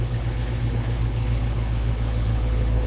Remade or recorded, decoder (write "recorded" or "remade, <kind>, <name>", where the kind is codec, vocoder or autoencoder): remade, codec, HILCodec